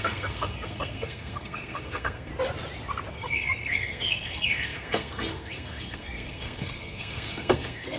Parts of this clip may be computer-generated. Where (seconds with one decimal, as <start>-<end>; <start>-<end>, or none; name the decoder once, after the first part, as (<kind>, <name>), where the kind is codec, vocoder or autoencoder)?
0.0-2.3 (codec, SNAC); 3.1-8.0